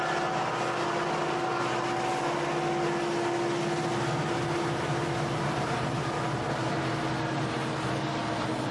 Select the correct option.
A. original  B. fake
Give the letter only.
A